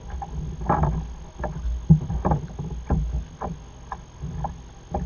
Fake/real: real